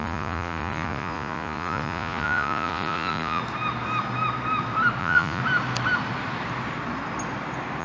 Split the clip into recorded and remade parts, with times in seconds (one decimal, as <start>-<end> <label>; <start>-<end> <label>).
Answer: 0.0-3.4 remade; 3.4-5.0 recorded; 5.0-5.4 remade; 5.4-7.8 recorded